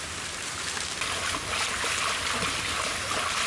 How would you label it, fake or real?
real